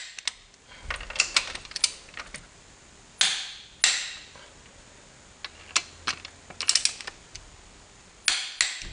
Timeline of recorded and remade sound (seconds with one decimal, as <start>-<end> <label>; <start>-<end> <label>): 0.0-8.9 recorded